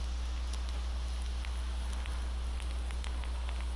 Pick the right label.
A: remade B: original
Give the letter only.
B